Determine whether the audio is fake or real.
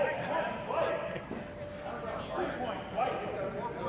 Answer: real